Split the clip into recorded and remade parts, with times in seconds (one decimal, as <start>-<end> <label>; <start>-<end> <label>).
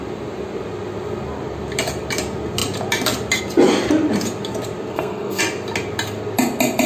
0.0-4.9 recorded; 4.9-5.4 remade; 5.4-6.9 recorded